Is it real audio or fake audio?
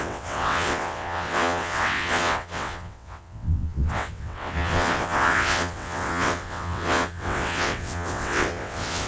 fake